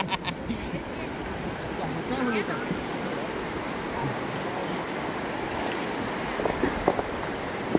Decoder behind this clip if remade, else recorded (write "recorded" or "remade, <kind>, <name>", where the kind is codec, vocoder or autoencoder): recorded